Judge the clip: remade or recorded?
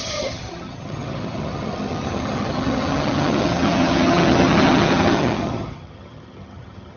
remade